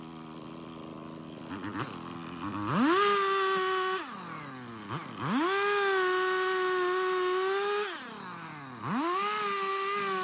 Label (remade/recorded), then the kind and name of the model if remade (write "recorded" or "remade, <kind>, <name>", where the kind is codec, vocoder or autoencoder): recorded